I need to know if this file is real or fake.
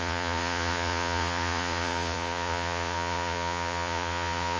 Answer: fake